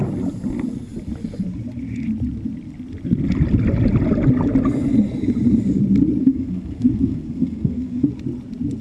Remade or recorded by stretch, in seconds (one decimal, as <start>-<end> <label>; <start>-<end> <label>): 0.0-6.2 recorded; 6.2-8.1 remade; 8.1-8.8 recorded